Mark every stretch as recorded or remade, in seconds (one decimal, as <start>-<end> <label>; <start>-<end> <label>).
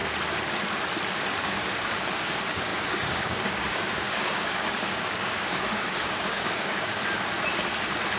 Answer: 0.0-1.4 recorded; 1.4-7.0 remade; 7.0-8.2 recorded